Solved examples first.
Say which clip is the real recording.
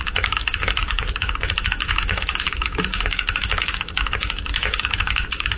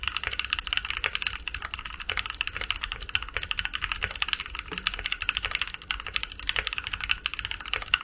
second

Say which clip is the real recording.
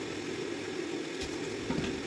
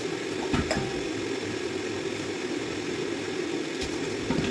first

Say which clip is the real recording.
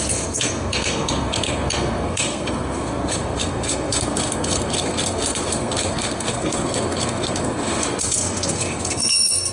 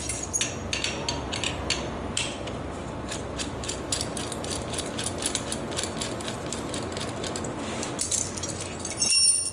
second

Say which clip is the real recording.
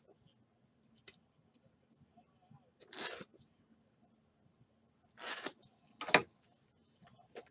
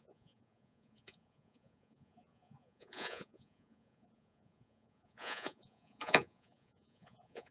first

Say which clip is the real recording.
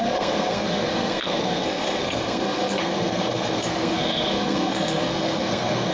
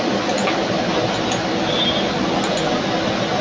second